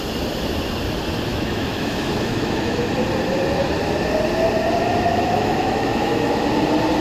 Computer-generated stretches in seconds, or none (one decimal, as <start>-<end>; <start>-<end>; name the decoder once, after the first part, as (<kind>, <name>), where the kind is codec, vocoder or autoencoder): 1.3-2.8 (autoencoder, DAC-VAE); 5.1-6.3